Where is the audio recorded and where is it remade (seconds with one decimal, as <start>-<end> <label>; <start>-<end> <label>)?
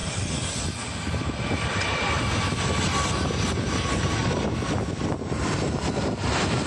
0.0-2.2 remade; 2.2-4.2 recorded; 4.2-5.9 remade; 5.9-6.7 recorded